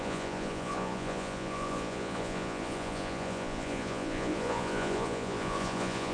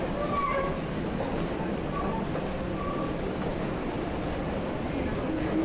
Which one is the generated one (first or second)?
first